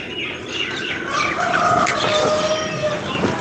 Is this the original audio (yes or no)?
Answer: yes